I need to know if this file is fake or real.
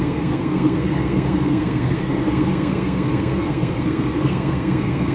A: fake